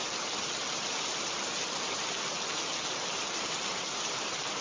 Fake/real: real